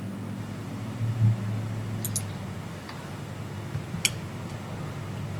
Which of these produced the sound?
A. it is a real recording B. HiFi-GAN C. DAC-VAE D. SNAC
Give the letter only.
A